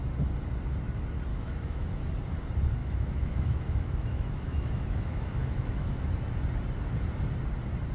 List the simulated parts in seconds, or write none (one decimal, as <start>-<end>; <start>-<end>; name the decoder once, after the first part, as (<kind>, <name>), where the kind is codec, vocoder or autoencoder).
1.3-2.0 (autoencoder, DAC-VAE); 2.8-6.1